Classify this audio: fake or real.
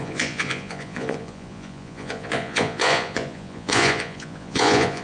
fake